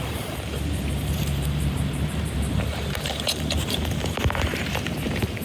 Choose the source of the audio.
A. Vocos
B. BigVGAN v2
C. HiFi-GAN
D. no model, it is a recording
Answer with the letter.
B